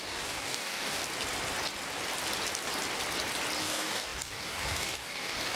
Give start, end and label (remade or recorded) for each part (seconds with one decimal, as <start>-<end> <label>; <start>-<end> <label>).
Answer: 0.0-1.0 remade; 1.0-3.6 recorded; 3.6-5.6 remade